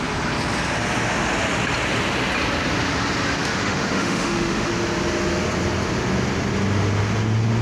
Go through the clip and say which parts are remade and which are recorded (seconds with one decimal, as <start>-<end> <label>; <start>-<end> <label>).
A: 0.0-3.4 recorded; 3.4-4.7 remade; 4.7-7.6 recorded